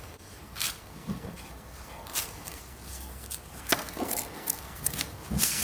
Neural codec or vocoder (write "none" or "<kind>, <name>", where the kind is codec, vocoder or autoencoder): codec, SNAC